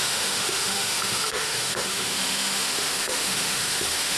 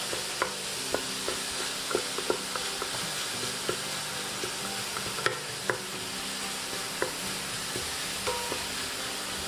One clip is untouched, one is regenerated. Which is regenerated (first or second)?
first